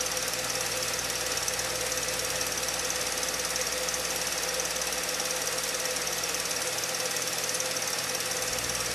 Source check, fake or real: real